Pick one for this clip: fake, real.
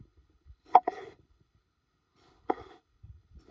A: fake